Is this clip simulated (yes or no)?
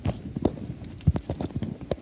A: no